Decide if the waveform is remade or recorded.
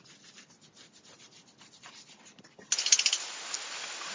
recorded